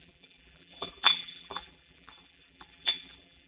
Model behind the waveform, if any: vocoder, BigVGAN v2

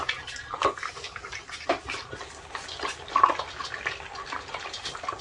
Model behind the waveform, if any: none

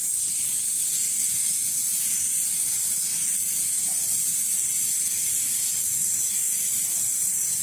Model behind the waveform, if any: none